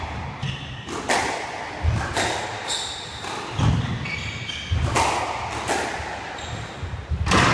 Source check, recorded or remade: recorded